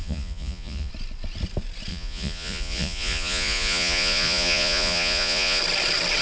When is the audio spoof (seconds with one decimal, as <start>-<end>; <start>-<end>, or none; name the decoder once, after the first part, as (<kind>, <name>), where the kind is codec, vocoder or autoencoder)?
0.0-0.9 (vocoder, Vocos); 1.9-5.6